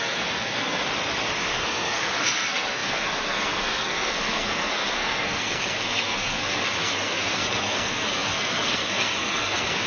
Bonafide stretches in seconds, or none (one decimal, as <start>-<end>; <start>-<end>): 0.8-1.5